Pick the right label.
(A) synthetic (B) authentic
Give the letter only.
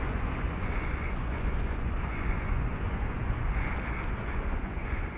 A